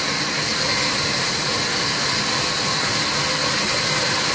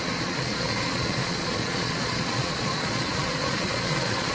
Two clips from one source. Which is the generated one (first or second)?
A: second